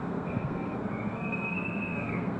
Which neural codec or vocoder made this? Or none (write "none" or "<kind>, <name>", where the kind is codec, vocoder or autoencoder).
codec, SNAC